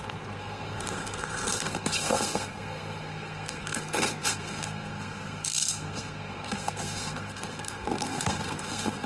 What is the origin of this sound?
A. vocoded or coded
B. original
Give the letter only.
A